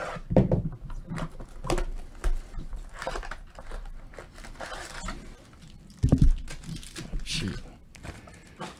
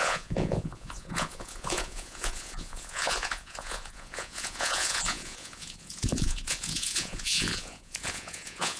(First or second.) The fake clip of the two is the second